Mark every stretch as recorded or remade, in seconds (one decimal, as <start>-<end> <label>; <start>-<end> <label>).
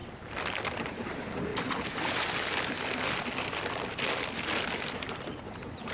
0.0-0.7 recorded; 0.7-1.5 remade; 1.5-5.0 recorded; 5.0-5.9 remade